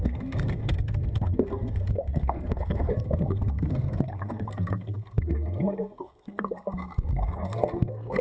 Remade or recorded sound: remade